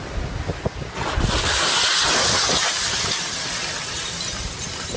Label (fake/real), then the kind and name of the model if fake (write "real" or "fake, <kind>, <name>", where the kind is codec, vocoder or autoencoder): real